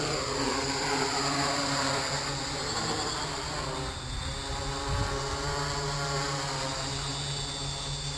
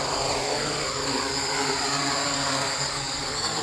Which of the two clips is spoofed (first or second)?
second